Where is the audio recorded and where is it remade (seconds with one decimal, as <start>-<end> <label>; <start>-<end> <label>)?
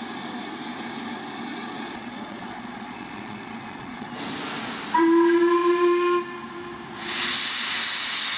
0.0-1.5 recorded; 1.5-4.2 remade; 4.2-8.4 recorded